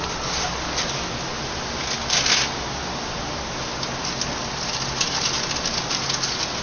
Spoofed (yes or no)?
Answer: no